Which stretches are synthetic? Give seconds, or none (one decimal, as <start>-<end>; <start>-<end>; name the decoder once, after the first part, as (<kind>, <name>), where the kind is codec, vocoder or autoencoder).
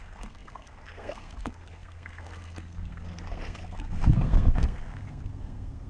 0.0-5.9 (codec, SNAC)